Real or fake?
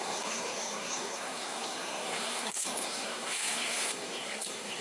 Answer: fake